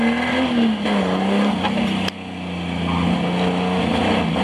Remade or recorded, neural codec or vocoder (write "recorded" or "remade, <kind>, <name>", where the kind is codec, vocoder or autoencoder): recorded